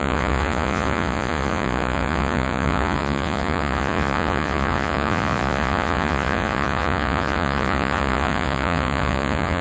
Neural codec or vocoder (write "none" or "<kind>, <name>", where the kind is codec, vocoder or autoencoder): vocoder, Vocos